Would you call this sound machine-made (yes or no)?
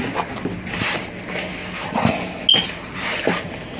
no